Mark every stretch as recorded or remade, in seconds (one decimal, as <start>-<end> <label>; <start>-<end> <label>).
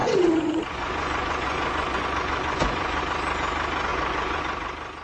0.0-3.0 remade; 3.0-3.9 recorded; 3.9-4.4 remade; 4.4-5.0 recorded